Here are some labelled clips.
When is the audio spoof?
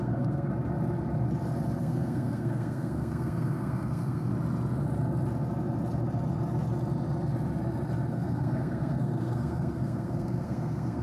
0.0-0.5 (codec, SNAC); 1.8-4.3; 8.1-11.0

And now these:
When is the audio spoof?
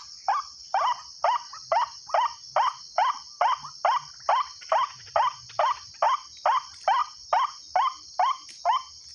none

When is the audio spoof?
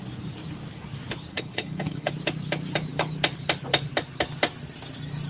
1.3-2.1 (codec, HILCodec)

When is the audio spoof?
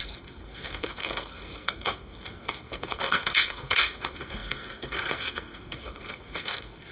0.0-6.9 (codec, SNAC)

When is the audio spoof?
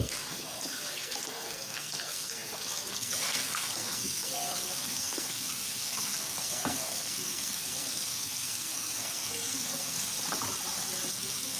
0.0-10.1 (codec, SNAC); 11.1-11.6